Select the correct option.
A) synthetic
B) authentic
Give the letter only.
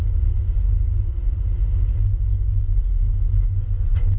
B